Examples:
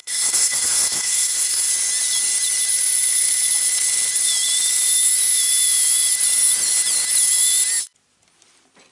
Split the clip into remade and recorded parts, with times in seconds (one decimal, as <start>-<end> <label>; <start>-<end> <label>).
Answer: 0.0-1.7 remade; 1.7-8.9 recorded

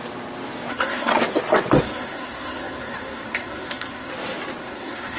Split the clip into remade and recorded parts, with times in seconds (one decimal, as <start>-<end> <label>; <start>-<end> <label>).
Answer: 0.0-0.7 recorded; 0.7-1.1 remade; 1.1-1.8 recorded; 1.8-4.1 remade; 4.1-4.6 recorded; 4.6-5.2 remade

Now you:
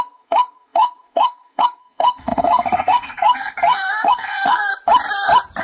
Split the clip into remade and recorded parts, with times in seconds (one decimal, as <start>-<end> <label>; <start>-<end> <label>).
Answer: 0.0-4.7 remade; 4.7-5.6 recorded